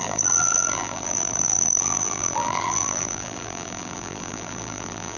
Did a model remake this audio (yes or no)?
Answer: yes